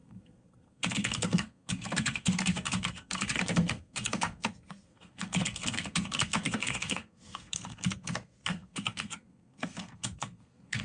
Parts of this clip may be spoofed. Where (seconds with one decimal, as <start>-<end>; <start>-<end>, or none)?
0.0-10.8